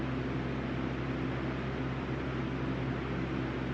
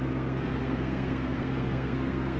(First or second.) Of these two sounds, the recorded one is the first